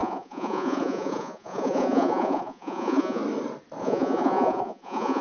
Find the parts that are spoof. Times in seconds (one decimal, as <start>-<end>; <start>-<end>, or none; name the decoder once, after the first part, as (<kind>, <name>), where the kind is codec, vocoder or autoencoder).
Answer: 0.0-3.2 (vocoder, Vocos); 3.8-5.2